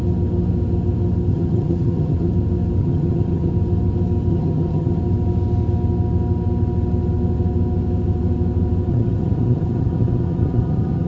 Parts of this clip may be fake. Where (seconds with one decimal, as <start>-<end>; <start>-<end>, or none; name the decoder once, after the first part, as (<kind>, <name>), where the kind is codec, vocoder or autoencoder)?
1.3-2.3 (vocoder, HiFi-GAN); 2.8-3.5; 4.3-5.0; 8.9-11.1